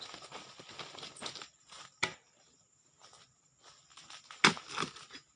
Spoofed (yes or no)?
no